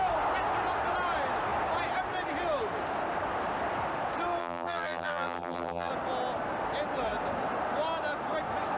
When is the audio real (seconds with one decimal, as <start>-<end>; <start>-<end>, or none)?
0.0-4.4; 5.9-8.8

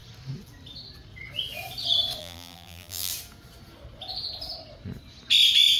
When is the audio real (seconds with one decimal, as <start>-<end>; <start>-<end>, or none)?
0.0-2.2; 3.1-5.8

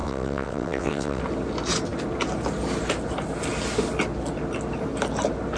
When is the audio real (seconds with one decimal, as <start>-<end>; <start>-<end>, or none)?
1.2-5.6